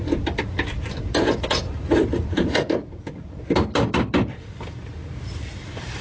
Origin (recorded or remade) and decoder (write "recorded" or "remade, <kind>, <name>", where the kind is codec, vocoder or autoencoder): recorded